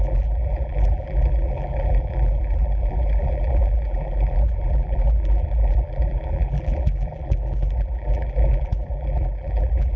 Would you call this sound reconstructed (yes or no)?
yes